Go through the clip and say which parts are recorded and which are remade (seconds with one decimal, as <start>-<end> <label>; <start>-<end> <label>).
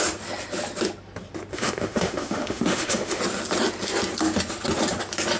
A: 0.0-1.5 recorded; 1.5-3.2 remade; 3.2-5.4 recorded